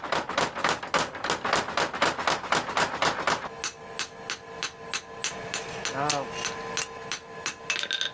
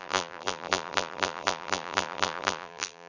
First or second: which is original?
first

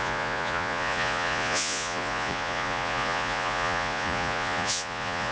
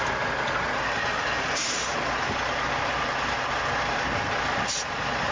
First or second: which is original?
second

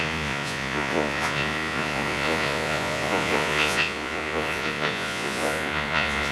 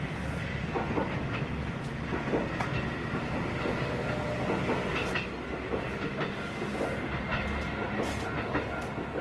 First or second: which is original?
second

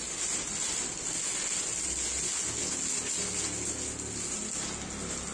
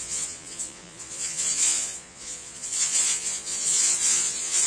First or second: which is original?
first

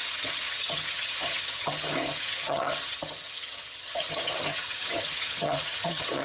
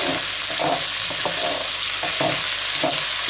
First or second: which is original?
second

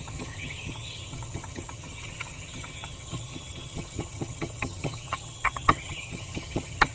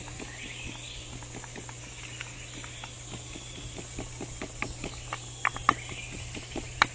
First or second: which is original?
second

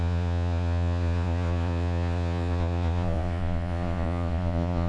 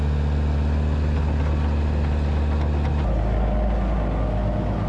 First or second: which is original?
second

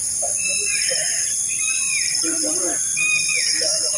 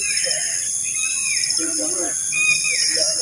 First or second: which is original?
second